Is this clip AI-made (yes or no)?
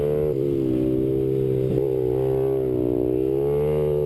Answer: no